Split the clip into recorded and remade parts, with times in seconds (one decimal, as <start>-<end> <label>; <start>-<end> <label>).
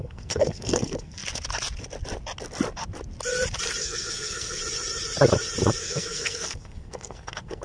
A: 0.0-1.2 remade; 1.2-3.8 recorded; 3.8-4.6 remade; 4.6-5.8 recorded; 5.8-7.6 remade